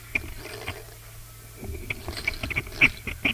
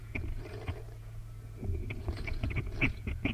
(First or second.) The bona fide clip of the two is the first